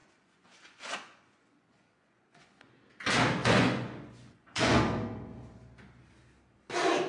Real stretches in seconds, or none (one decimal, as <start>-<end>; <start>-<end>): 2.7-3.4; 4.8-7.1

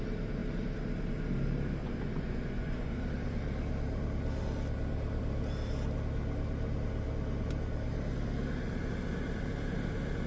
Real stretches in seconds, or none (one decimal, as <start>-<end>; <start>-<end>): 0.0-1.8; 2.9-10.3